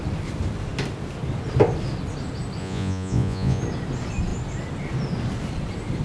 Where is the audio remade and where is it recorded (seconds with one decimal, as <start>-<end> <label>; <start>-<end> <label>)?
0.0-2.6 recorded; 2.6-3.6 remade; 3.6-6.0 recorded